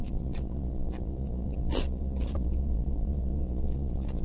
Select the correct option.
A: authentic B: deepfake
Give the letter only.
B